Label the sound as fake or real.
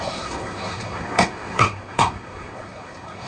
fake